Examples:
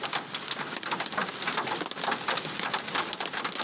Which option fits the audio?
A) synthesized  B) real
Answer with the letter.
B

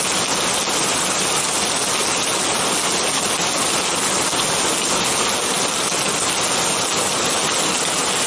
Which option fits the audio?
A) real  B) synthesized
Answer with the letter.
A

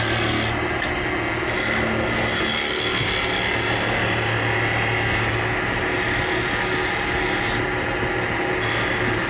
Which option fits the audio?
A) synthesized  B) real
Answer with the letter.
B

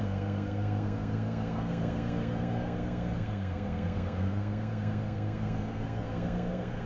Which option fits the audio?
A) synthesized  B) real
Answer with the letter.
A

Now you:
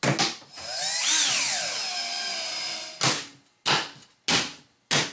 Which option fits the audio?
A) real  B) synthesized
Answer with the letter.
A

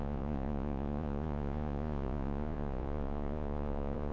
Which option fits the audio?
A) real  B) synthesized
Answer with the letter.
B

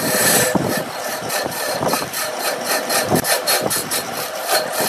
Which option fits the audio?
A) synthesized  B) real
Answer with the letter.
A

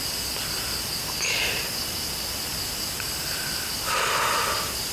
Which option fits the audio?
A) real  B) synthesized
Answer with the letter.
A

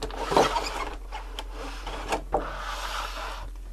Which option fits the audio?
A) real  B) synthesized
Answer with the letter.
A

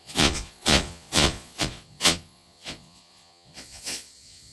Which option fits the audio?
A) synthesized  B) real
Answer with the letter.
A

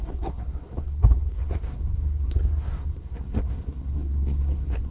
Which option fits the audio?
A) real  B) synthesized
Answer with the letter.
B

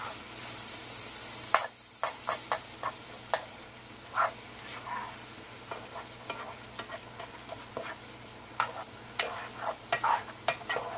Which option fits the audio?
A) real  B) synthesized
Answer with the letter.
A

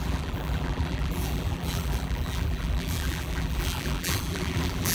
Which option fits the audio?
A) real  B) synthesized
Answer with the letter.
B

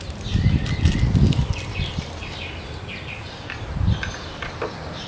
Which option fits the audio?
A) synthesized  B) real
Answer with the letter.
B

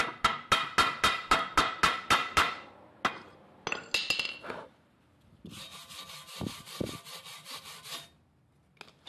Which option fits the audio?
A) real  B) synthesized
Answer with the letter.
A